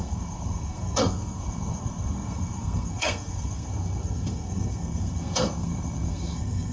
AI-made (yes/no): yes